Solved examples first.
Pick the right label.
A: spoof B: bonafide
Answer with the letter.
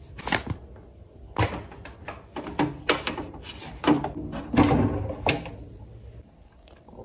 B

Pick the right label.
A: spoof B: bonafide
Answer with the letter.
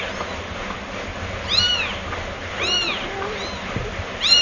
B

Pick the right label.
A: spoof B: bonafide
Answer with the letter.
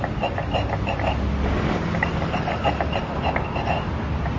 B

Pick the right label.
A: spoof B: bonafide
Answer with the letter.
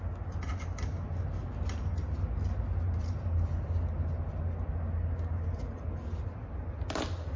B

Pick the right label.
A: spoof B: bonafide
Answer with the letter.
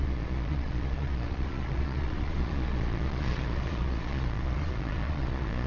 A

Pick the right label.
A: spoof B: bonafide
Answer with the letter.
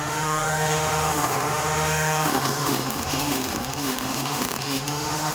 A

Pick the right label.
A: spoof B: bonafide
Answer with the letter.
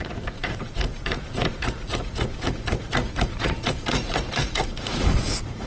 A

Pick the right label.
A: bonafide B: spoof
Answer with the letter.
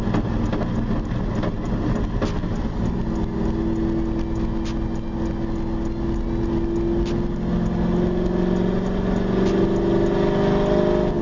A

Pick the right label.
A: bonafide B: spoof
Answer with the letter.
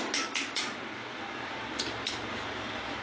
A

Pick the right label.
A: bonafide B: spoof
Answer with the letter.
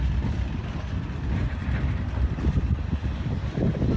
A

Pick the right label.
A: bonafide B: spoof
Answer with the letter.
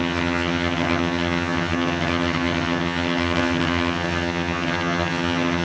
B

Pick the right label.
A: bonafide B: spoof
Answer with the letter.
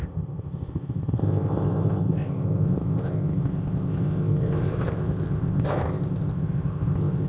B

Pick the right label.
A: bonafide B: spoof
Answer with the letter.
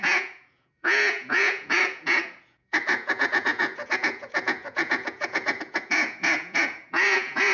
B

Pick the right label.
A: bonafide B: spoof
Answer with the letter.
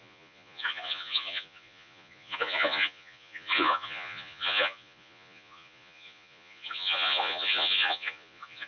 B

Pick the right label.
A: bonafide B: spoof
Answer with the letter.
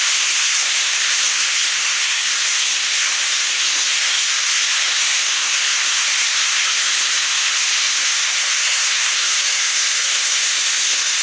B